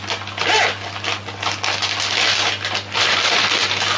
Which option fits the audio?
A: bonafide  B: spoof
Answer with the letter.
A